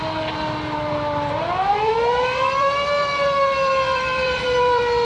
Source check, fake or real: fake